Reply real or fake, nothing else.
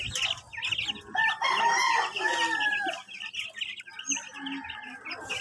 real